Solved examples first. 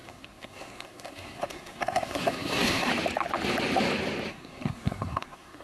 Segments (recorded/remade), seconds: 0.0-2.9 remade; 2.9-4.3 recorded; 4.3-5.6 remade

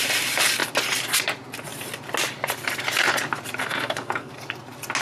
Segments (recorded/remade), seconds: 0.0-3.6 recorded; 3.6-4.3 remade; 4.3-5.0 recorded